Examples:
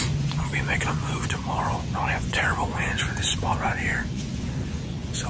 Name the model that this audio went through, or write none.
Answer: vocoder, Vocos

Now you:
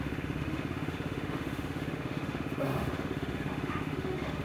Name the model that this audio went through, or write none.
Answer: autoencoder, DAC-VAE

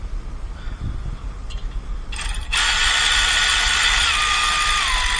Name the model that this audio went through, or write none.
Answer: none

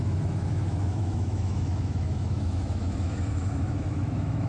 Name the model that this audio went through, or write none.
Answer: autoencoder, DAC-VAE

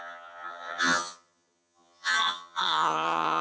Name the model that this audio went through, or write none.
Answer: vocoder, HiFi-GAN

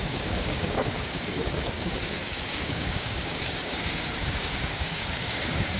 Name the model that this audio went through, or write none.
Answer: codec, DAC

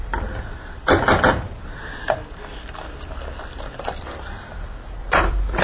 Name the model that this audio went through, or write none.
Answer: vocoder, BigVGAN v2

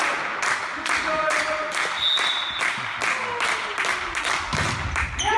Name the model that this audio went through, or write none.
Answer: none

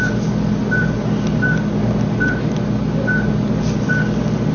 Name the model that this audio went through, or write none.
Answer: none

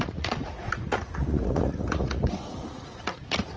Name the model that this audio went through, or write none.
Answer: vocoder, Vocos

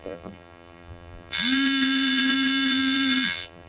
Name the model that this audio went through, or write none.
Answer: vocoder, BigVGAN v2